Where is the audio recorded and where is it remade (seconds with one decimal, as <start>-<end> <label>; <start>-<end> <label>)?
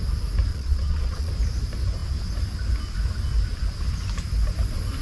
0.0-0.5 recorded; 0.5-1.3 remade; 1.3-5.0 recorded